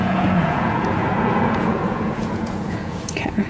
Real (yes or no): no